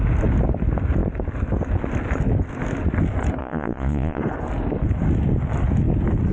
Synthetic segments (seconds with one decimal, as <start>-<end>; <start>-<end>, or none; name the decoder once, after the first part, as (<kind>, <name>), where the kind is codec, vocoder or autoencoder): 3.4-4.2 (vocoder, Vocos)